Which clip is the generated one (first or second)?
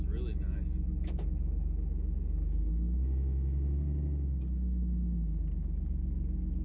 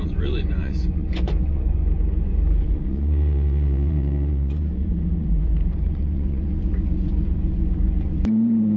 second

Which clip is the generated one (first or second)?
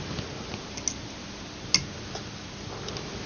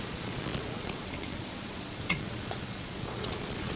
second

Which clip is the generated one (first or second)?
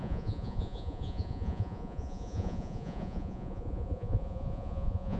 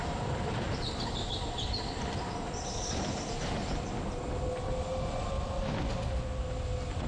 first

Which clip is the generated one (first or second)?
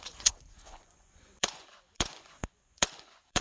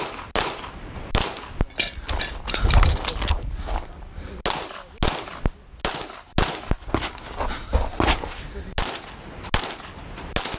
first